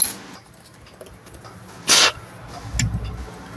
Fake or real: real